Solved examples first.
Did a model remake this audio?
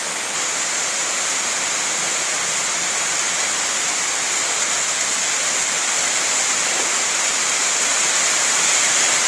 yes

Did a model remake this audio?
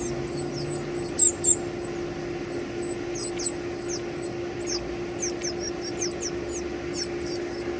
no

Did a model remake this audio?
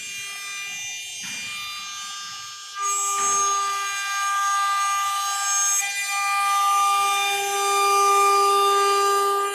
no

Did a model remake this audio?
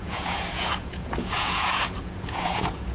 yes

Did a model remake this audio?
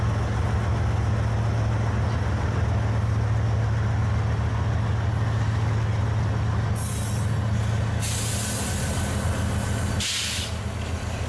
no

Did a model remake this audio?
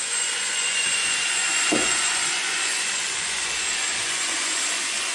yes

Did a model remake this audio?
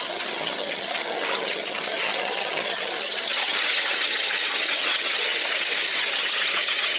yes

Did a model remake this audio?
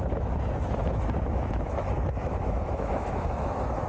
yes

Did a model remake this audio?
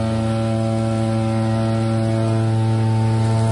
no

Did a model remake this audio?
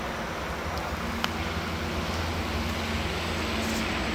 no